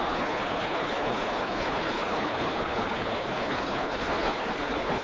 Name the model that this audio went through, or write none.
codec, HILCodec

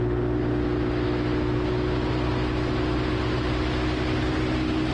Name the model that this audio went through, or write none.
none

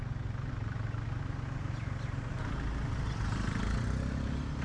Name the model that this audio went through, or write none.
none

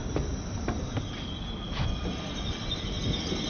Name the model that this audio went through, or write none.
none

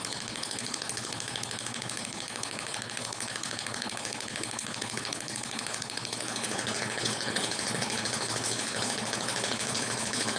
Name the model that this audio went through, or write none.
codec, HILCodec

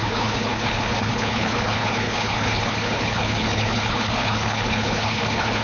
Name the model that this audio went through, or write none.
codec, HILCodec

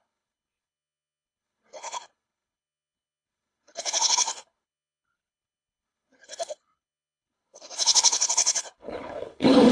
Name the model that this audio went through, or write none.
codec, HILCodec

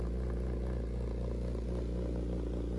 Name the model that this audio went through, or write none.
none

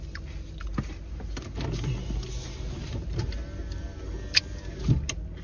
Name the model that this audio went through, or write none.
none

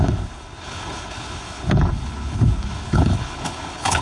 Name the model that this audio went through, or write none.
codec, HILCodec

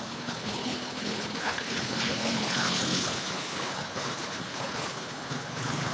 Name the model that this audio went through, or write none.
codec, HILCodec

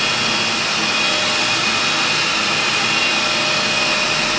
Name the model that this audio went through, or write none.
none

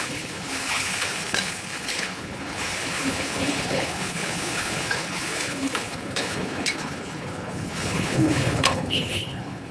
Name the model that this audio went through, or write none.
codec, HILCodec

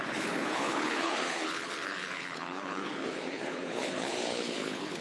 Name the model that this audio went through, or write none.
codec, HILCodec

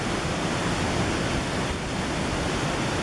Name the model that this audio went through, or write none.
none